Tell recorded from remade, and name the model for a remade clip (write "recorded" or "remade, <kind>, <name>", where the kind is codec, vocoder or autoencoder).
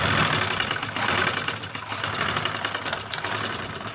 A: recorded